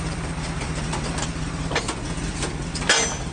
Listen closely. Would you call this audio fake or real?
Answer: real